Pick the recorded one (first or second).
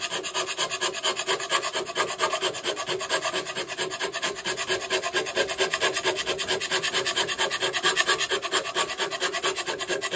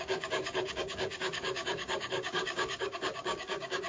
first